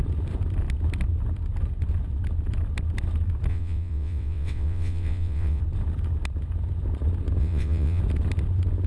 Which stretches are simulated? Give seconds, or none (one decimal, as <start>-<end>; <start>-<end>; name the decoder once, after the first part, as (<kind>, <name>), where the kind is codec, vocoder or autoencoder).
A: 3.5-5.6 (vocoder, WaveNeXt); 7.4-8.0